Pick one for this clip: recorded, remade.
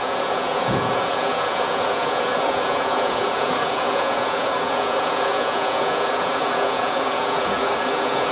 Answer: remade